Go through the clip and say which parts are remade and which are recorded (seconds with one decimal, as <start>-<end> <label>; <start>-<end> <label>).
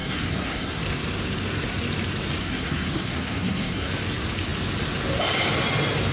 0.0-0.8 remade; 0.8-2.4 recorded; 2.4-3.9 remade; 3.9-6.1 recorded